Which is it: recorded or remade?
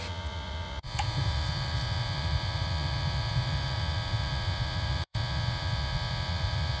remade